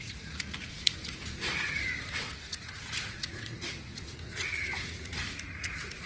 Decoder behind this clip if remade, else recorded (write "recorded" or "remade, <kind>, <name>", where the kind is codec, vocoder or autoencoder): remade, vocoder, Vocos